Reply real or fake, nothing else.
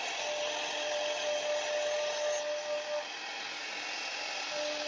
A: real